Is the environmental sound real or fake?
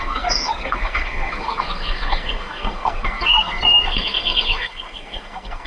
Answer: fake